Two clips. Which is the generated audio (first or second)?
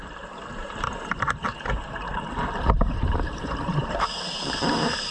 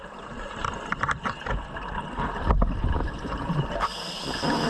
first